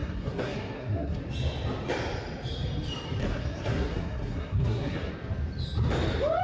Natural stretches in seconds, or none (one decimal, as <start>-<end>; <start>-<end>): 1.2-3.2; 5.1-6.4